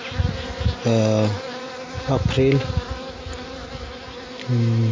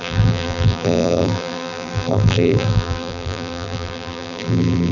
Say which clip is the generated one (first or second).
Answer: second